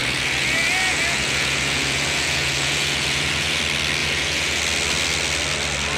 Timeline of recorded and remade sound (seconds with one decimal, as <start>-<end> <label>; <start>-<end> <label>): 0.0-3.6 remade; 3.6-4.0 recorded; 4.0-4.6 remade; 4.6-6.0 recorded